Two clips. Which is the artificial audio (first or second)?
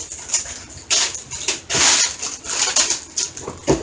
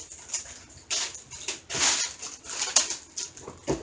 first